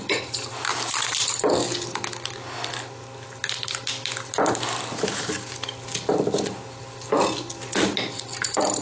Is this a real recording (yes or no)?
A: yes